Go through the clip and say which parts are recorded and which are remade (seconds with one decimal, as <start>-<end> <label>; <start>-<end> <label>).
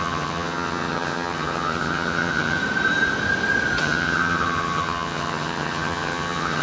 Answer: 0.0-2.6 remade; 2.6-3.8 recorded; 3.8-6.6 remade